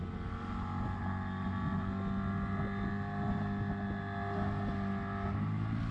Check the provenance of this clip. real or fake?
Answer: real